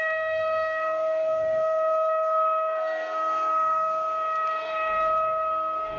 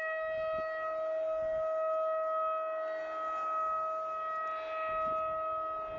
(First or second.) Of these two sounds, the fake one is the first